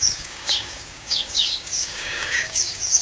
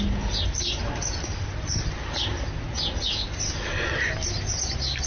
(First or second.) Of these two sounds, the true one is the second